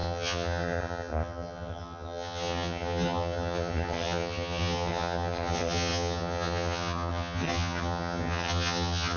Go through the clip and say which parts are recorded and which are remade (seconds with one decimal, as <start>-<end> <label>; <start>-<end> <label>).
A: 0.0-9.2 remade